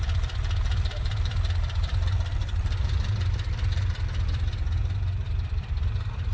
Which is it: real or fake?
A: fake